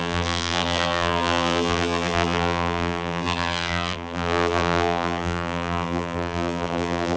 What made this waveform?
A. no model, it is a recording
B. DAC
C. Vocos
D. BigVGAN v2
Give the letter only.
D